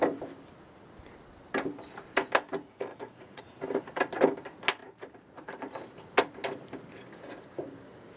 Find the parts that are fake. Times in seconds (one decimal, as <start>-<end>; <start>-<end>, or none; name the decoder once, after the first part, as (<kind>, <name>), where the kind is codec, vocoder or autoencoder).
2.9-3.4 (vocoder, Vocos)